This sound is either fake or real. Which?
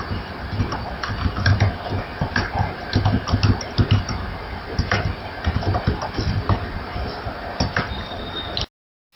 real